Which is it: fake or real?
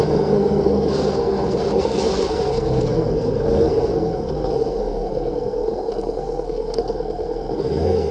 fake